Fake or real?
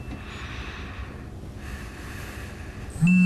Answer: real